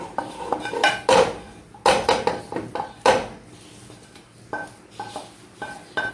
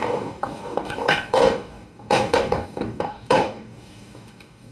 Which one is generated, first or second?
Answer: second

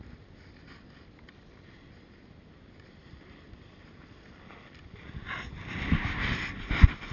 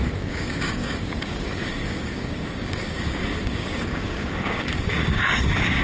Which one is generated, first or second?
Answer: second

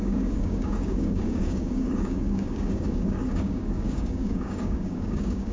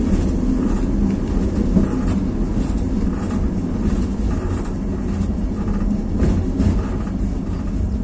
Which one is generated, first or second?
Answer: first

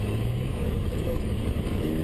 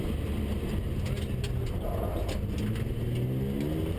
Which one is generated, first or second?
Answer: first